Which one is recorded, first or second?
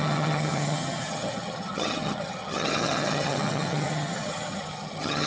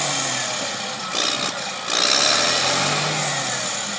second